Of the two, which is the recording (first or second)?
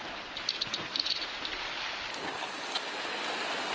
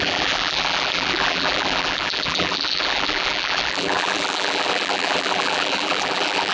first